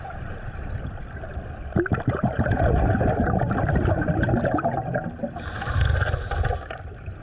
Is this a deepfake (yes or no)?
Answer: no